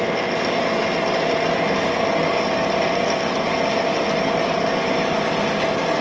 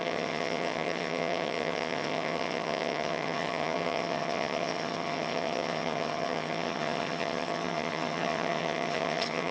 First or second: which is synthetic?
second